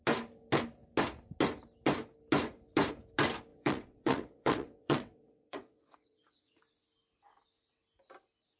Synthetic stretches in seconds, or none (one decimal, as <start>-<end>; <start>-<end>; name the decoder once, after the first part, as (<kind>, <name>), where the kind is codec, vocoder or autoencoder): 3.5-6.6 (vocoder, WaveNeXt)